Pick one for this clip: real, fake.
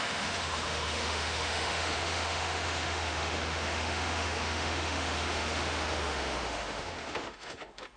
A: fake